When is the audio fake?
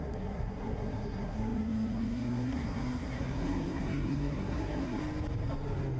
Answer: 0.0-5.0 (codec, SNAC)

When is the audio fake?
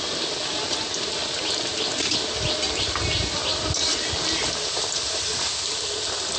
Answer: none